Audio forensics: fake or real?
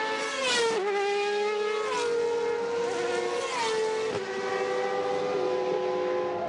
real